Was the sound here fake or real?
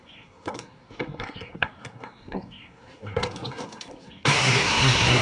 fake